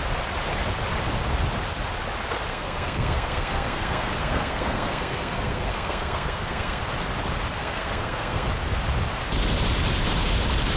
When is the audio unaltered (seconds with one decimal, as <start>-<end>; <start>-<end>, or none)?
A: 0.0-2.5; 6.8-7.6; 8.5-10.8